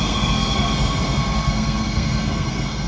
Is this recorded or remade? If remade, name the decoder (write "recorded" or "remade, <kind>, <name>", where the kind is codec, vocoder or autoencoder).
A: remade, codec, SNAC